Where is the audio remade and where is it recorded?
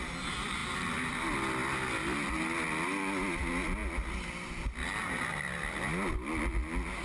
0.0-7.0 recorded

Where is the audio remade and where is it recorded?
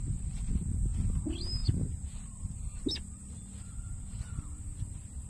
0.0-1.6 recorded; 1.6-2.8 remade; 2.8-3.2 recorded; 3.2-4.4 remade; 4.4-5.3 recorded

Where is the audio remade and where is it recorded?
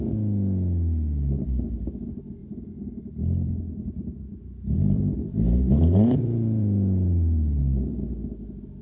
0.0-2.4 recorded; 2.4-7.6 remade; 7.6-8.8 recorded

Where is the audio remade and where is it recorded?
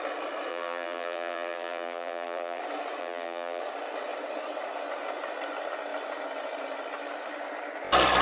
0.0-0.5 recorded; 0.5-2.6 remade; 2.6-3.0 recorded; 3.0-3.6 remade; 3.6-8.2 recorded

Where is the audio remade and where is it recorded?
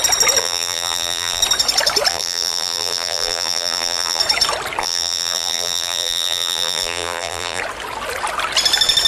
0.0-0.4 recorded; 0.4-1.4 remade; 1.4-2.1 recorded; 2.1-4.2 remade; 4.2-4.8 recorded; 4.8-7.6 remade; 7.6-9.1 recorded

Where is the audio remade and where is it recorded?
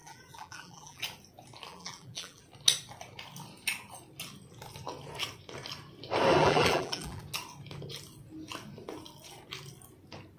0.0-1.0 remade; 1.0-1.7 recorded; 1.7-2.4 remade; 2.4-6.4 recorded; 6.4-7.2 remade; 7.2-10.4 recorded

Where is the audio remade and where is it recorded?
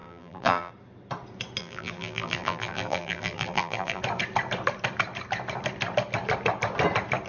0.0-0.7 remade; 0.7-1.6 recorded; 1.6-4.0 remade; 4.0-7.3 recorded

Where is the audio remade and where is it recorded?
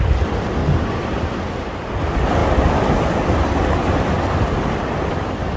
0.0-0.6 recorded; 0.6-1.5 remade; 1.5-5.6 recorded